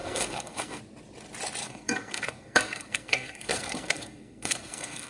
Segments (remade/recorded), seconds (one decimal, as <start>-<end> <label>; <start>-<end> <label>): 0.0-0.8 remade; 0.8-1.6 recorded; 1.6-5.1 remade